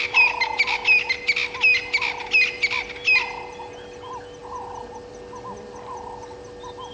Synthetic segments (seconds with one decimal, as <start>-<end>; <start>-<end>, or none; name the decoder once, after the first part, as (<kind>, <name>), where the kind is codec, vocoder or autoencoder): none